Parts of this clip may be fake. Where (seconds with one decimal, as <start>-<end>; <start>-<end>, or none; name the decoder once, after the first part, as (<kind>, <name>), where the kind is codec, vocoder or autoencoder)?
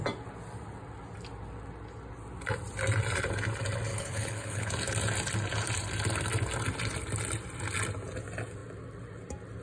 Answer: 3.9-4.7 (codec, HILCodec)